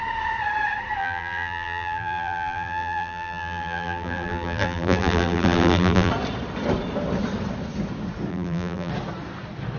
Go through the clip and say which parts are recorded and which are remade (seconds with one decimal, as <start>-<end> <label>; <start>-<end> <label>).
0.0-1.0 recorded; 1.0-6.1 remade; 6.1-8.3 recorded; 8.3-8.9 remade; 8.9-9.8 recorded